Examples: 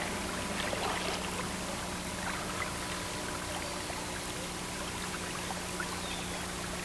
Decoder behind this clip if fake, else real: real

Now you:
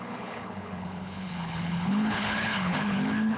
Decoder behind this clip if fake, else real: fake, codec, HILCodec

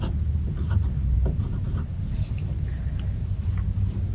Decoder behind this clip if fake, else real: real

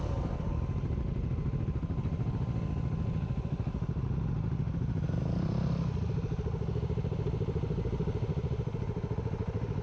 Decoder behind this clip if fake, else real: real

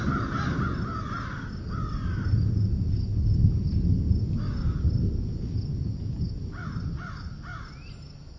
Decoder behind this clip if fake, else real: real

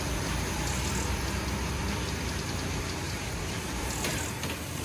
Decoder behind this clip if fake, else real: real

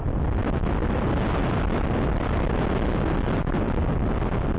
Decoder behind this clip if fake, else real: real